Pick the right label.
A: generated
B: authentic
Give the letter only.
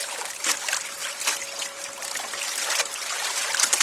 B